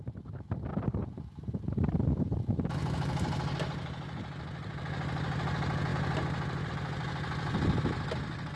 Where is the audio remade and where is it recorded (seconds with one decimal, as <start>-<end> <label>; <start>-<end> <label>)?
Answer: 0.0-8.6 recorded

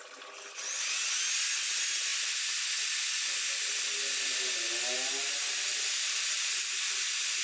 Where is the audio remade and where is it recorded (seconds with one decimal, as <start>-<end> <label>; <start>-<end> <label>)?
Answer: 0.0-7.4 recorded

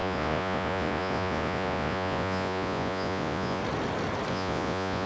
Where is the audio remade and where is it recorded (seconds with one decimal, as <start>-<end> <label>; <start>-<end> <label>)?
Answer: 0.0-3.6 remade; 3.6-4.3 recorded; 4.3-5.1 remade

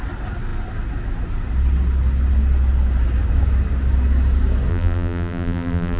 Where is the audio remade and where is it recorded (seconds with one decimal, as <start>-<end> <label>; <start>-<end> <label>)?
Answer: 0.0-4.7 recorded; 4.7-6.0 remade

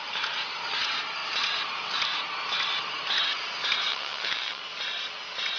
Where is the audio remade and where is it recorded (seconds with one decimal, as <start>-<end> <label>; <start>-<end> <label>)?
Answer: 0.0-3.9 recorded; 3.9-4.6 remade; 4.6-5.6 recorded

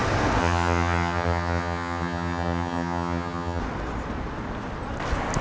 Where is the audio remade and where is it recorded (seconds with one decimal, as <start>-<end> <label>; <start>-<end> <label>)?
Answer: 0.0-0.4 recorded; 0.4-3.6 remade; 3.6-5.4 recorded

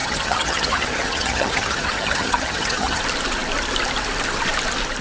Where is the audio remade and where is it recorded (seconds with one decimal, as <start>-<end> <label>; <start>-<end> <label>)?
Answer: 0.0-3.0 remade; 3.0-5.0 recorded